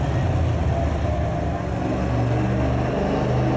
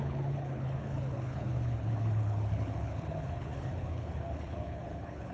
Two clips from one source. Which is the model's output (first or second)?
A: second